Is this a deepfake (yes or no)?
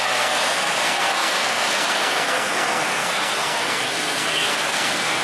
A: yes